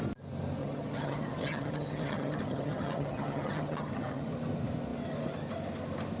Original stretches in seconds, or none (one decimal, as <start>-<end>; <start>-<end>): 0.0-0.6; 4.3-6.2